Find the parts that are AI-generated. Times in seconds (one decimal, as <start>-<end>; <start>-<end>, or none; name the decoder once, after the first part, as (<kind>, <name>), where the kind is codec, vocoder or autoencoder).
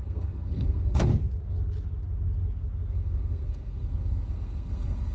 0.0-1.1 (codec, SNAC); 2.9-5.1